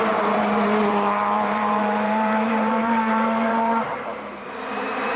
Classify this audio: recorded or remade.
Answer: remade